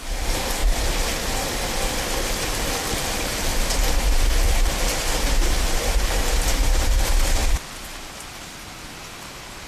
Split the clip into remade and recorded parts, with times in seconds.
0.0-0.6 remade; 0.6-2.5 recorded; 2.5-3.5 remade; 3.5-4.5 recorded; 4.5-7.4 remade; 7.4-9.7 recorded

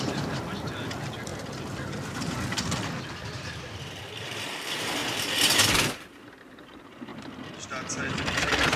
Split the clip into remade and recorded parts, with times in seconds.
0.0-5.0 remade; 5.0-6.4 recorded; 6.4-7.1 remade; 7.1-8.1 recorded; 8.1-8.8 remade

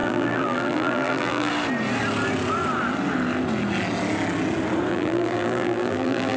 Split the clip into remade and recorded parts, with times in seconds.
0.0-1.5 remade; 1.5-4.9 recorded; 4.9-6.4 remade